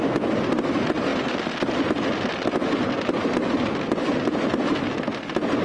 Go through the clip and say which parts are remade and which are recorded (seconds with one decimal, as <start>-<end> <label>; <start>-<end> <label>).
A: 0.0-5.6 recorded